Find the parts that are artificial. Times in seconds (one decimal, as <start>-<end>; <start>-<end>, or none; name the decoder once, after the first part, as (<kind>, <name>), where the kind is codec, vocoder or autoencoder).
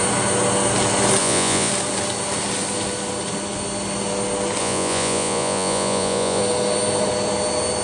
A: 1.2-1.7 (vocoder, Vocos); 4.6-6.4